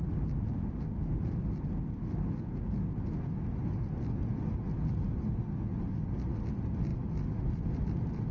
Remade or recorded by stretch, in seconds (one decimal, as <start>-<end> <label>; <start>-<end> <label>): 0.0-8.3 recorded